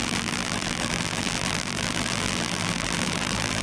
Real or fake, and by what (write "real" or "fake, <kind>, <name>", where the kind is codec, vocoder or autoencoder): fake, vocoder, BigVGAN v2